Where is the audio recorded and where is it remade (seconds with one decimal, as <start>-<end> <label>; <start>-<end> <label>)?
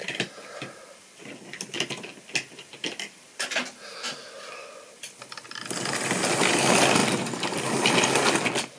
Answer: 0.0-8.8 recorded